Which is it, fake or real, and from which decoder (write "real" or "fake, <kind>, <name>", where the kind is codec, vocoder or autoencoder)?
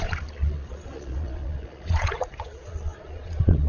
fake, vocoder, Vocos